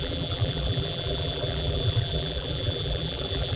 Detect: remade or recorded remade